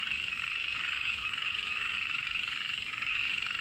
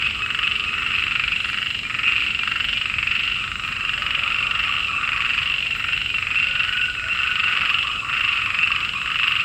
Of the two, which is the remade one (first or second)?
first